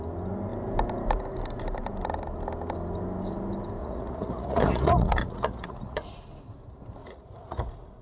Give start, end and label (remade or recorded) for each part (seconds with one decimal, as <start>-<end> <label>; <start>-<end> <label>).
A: 0.0-3.8 recorded; 3.8-6.2 remade; 6.2-7.0 recorded; 7.0-8.0 remade